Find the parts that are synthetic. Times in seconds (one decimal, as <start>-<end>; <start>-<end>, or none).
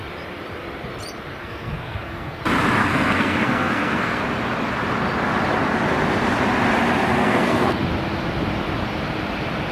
1.4-2.4; 2.8-4.2; 7.2-7.8